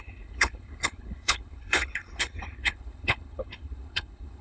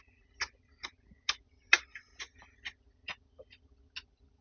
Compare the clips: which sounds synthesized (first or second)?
first